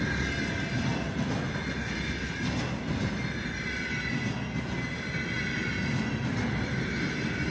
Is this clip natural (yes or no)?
yes